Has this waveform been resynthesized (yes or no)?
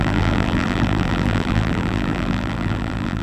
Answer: yes